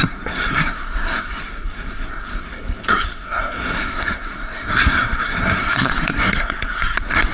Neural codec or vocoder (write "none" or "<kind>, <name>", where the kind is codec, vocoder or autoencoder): codec, SNAC